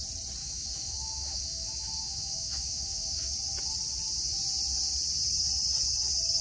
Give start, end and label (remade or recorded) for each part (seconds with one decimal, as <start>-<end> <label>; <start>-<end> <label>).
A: 0.0-0.4 recorded; 0.4-3.3 remade; 3.3-6.4 recorded